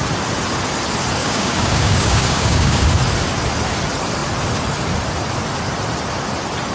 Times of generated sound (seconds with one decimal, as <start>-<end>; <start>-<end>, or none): 1.2-2.9